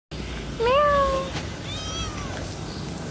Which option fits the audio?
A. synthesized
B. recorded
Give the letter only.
B